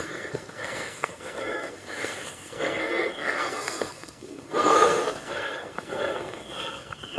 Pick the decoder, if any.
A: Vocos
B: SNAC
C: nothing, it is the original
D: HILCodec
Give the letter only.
B